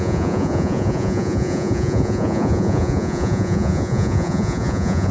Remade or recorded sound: remade